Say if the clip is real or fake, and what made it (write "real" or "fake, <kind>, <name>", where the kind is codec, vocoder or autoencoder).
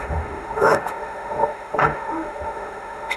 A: fake, autoencoder, DAC-VAE